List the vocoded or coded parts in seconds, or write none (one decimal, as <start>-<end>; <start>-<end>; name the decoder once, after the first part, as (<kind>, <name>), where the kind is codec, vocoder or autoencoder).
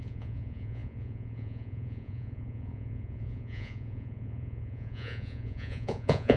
0.0-6.4 (vocoder, Vocos)